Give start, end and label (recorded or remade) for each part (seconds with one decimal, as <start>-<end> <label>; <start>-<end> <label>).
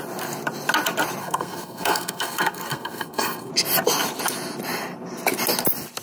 0.0-1.2 recorded; 1.2-3.5 remade; 3.5-6.0 recorded